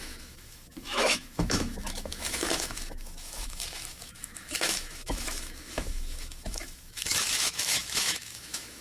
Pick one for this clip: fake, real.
fake